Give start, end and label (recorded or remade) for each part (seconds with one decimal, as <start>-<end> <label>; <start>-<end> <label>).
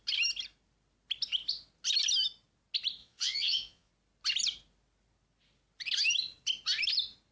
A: 0.0-3.0 recorded; 3.0-3.9 remade; 3.9-7.3 recorded